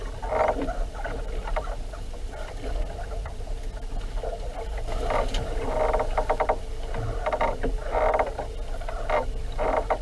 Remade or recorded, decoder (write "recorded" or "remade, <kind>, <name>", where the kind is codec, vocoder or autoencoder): recorded